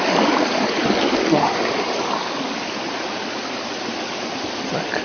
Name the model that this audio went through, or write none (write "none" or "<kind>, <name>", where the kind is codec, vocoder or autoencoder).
none